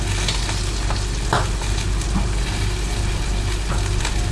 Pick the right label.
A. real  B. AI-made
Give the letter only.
A